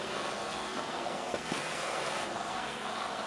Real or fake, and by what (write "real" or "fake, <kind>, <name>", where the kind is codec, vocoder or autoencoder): fake, codec, SNAC